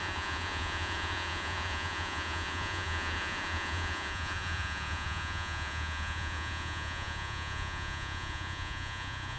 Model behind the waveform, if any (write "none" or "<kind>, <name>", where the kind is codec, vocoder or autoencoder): vocoder, Vocos